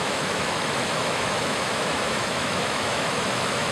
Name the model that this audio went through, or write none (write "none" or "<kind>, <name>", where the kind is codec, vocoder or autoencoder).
autoencoder, DAC-VAE